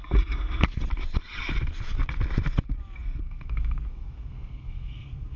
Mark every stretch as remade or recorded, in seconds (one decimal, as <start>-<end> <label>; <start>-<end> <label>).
0.0-3.2 recorded; 3.2-5.4 remade